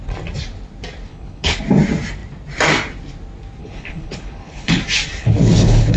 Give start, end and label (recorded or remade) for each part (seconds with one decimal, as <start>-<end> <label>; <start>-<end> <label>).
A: 0.0-1.1 recorded; 1.1-1.6 remade; 1.6-3.6 recorded; 3.6-4.8 remade; 4.8-5.2 recorded; 5.2-6.0 remade